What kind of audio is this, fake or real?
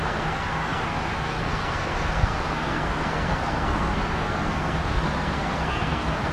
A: fake